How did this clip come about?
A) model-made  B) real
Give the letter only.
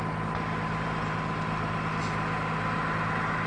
B